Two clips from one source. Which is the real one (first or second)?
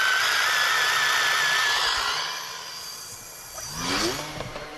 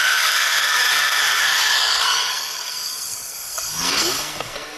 first